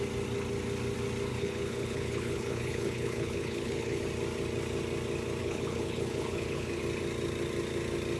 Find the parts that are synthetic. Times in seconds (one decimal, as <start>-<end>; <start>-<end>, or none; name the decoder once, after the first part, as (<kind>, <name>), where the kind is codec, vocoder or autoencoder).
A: 1.3-4.0 (codec, HILCodec); 5.4-6.8